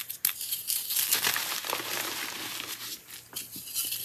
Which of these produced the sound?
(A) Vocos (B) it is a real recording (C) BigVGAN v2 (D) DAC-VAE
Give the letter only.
B